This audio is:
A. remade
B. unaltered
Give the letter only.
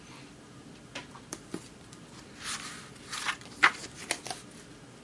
B